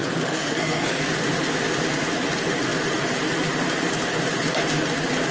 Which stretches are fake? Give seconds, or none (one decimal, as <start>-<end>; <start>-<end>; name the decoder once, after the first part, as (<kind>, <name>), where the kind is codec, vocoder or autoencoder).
0.0-1.1 (codec, SNAC)